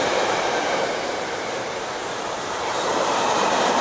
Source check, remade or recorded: remade